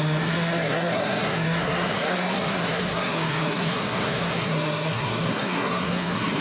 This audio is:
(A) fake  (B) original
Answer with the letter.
A